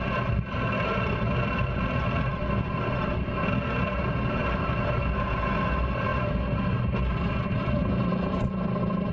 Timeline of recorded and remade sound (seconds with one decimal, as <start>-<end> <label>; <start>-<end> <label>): 0.0-9.1 recorded